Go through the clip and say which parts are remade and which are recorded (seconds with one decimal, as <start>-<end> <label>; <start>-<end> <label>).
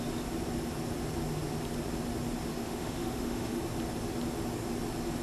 0.0-2.5 recorded; 2.5-3.6 remade; 3.6-5.2 recorded